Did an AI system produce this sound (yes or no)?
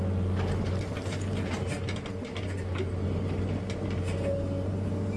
no